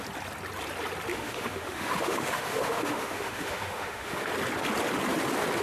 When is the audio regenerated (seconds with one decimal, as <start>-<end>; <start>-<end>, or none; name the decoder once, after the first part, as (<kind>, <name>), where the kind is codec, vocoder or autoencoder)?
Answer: 1.1-4.3 (autoencoder, DAC-VAE)